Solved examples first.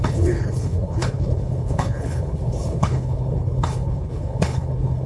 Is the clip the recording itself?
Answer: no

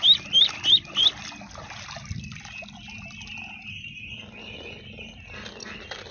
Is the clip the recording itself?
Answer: yes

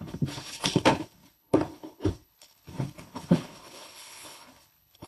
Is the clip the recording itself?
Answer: no